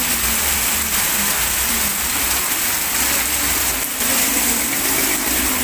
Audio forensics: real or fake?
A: real